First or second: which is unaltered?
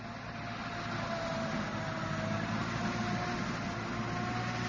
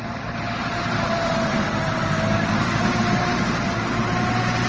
first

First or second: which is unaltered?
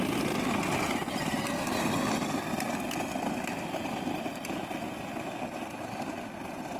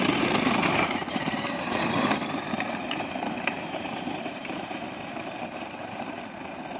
first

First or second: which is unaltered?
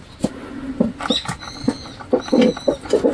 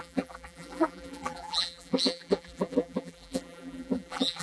first